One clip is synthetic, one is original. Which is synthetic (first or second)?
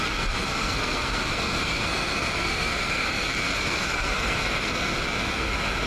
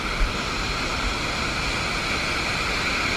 first